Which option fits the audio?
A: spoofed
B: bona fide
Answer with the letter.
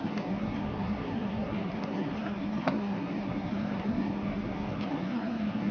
A